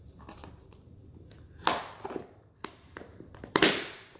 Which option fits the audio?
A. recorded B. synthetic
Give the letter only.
A